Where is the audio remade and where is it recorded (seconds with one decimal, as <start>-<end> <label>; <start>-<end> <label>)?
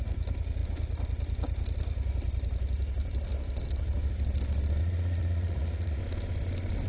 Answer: 0.0-4.8 recorded; 4.8-6.0 remade; 6.0-6.9 recorded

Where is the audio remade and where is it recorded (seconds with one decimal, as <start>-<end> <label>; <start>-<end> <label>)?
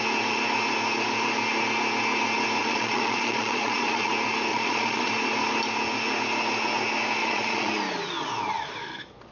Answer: 0.0-2.6 recorded; 2.6-4.1 remade; 4.1-4.5 recorded; 4.5-5.1 remade; 5.1-7.2 recorded; 7.2-7.7 remade; 7.7-9.3 recorded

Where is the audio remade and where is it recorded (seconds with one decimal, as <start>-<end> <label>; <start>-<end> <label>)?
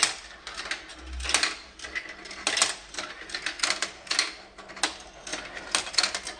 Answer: 0.0-6.4 recorded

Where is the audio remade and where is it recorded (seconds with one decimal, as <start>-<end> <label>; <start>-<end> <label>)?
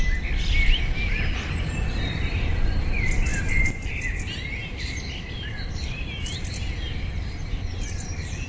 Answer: 0.0-8.5 recorded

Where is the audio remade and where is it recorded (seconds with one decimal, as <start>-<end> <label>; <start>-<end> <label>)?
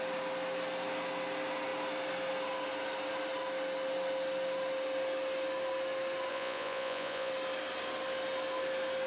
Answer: 0.0-6.3 recorded; 6.3-7.3 remade; 7.3-9.1 recorded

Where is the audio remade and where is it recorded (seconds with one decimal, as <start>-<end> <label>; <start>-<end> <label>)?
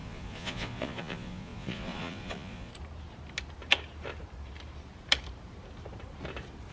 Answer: 0.0-2.7 remade; 2.7-6.7 recorded